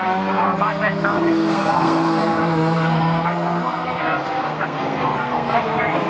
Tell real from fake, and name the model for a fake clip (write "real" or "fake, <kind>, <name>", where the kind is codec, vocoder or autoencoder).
fake, codec, SNAC